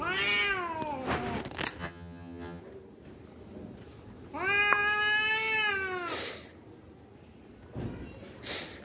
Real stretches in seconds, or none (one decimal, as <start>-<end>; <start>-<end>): 0.0-1.8; 2.6-8.8